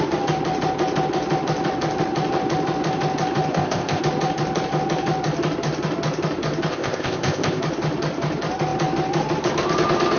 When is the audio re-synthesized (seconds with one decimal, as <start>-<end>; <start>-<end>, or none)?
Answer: 3.5-4.0; 6.7-7.6

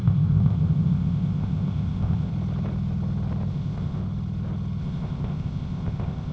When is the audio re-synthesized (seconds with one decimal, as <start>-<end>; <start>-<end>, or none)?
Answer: 0.0-2.3; 3.5-4.0; 4.8-6.3

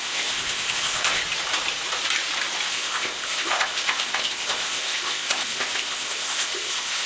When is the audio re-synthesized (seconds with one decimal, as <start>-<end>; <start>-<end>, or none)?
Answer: 0.0-1.2; 2.7-7.1